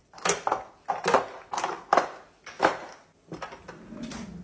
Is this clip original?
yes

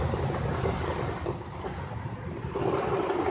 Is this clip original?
yes